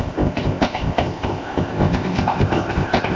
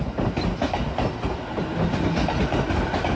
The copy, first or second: first